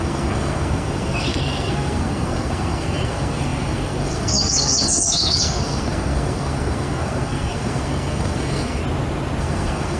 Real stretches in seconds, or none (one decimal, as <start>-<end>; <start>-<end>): 8.8-9.4